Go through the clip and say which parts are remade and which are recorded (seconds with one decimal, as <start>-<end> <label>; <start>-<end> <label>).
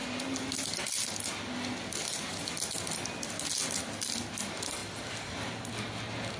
0.0-6.4 recorded